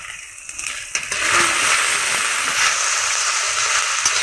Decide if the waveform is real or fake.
real